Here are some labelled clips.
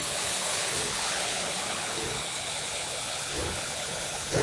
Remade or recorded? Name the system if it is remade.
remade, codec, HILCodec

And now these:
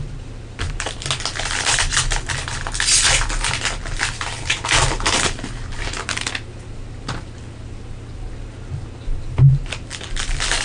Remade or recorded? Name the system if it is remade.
recorded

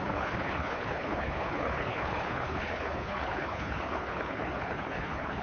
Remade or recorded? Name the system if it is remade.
remade, codec, HILCodec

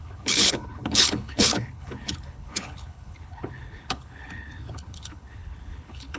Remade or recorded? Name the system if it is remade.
remade, codec, HILCodec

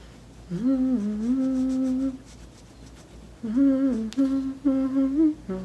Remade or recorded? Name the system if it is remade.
recorded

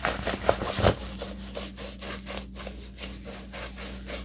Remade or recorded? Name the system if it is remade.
recorded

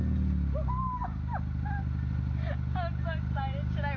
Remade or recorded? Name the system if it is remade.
recorded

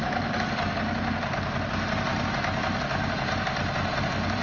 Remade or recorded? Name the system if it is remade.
recorded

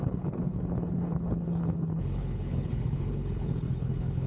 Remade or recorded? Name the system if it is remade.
remade, codec, HILCodec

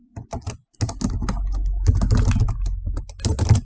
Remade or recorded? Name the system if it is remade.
recorded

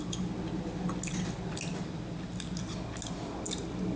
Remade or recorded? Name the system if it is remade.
recorded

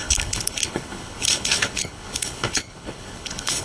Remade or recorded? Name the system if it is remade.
remade, codec, HILCodec